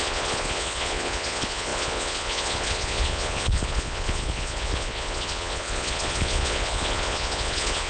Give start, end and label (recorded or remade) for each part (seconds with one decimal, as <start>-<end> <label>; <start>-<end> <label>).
0.0-7.9 remade